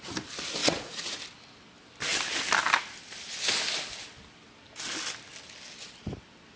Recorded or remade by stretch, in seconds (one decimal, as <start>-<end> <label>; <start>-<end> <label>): 0.0-0.6 recorded; 0.6-1.2 remade; 1.2-6.6 recorded